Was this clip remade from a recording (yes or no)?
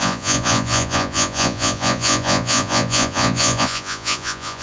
yes